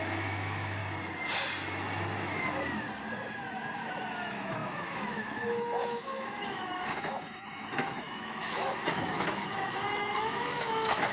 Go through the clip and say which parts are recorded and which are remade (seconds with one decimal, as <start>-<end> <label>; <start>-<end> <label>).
0.0-0.8 remade; 0.8-3.9 recorded; 3.9-11.1 remade